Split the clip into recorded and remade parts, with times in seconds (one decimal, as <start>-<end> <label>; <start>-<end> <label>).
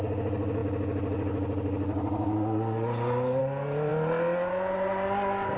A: 0.0-5.6 recorded